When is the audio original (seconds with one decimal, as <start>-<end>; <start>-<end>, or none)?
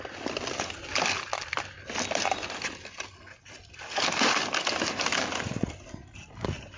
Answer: 0.0-6.8